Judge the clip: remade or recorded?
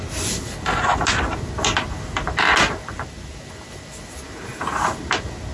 recorded